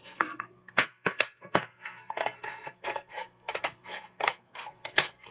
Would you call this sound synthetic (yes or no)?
yes